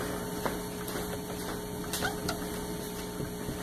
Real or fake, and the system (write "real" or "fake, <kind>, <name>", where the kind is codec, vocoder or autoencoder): real